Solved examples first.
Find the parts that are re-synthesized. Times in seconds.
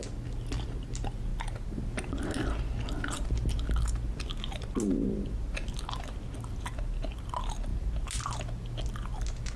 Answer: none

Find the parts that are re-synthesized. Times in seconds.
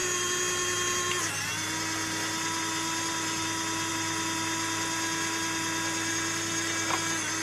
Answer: none